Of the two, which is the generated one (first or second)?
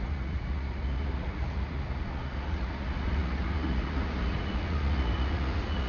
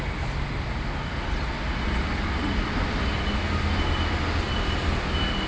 first